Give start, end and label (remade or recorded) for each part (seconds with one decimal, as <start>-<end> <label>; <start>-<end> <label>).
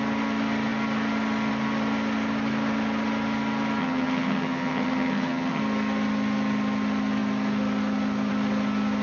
0.0-3.8 recorded; 3.8-5.6 remade; 5.6-9.0 recorded